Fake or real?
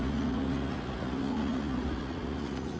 fake